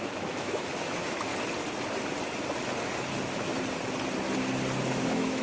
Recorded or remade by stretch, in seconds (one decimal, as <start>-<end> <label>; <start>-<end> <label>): 0.0-1.3 remade; 1.3-3.1 recorded; 3.1-3.5 remade; 3.5-4.9 recorded; 4.9-5.4 remade